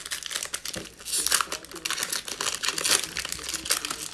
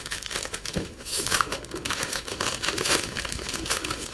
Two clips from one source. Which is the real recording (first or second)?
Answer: first